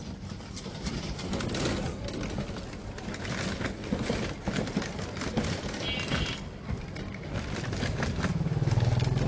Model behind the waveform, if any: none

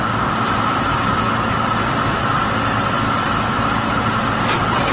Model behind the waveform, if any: none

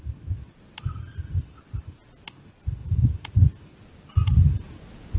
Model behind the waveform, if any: none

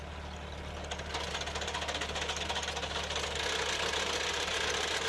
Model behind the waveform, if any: none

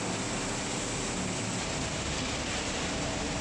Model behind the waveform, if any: none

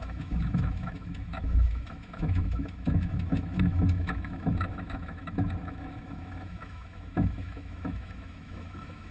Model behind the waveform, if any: autoencoder, DAC-VAE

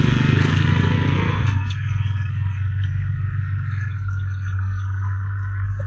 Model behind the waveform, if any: codec, SNAC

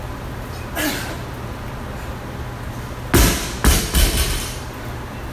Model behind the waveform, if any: none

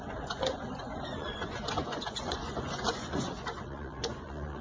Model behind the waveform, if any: vocoder, Vocos